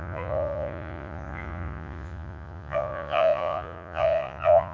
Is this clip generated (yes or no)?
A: yes